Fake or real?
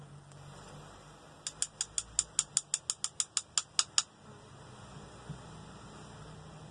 real